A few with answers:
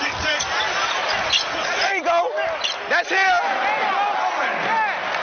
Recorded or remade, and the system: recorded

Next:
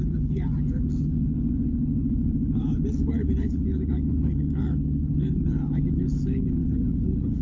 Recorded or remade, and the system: remade, codec, HILCodec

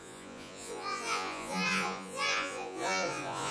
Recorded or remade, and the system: remade, vocoder, Vocos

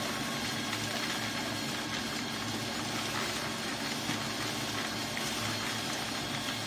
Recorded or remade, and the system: recorded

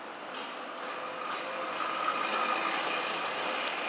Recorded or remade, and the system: recorded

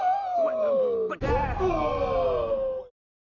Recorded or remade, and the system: recorded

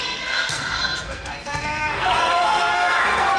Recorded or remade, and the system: remade, codec, SNAC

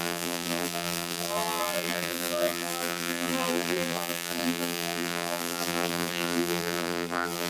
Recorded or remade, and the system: remade, vocoder, BigVGAN v2